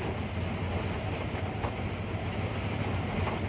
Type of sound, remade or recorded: recorded